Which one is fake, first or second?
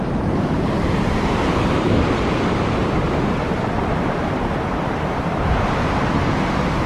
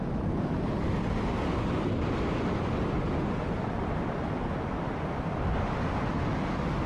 first